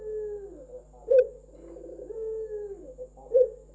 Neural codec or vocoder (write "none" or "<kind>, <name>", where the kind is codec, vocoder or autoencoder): none